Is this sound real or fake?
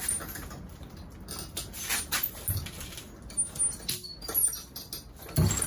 real